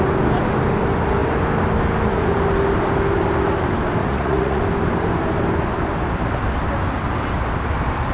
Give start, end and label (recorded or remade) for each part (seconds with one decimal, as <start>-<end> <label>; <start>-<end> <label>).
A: 0.0-4.0 recorded; 4.0-4.6 remade; 4.6-8.1 recorded